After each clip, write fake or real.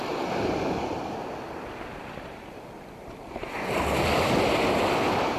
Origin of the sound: real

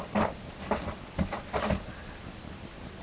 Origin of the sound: real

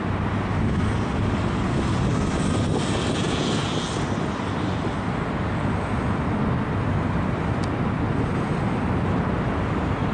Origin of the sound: real